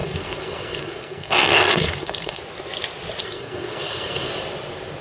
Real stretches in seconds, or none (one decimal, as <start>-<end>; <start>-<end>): 2.4-3.2; 4.3-5.0